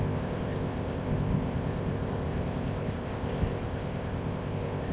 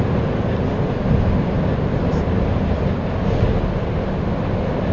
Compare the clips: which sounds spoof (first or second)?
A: first